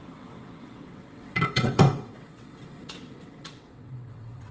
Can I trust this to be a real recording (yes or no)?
no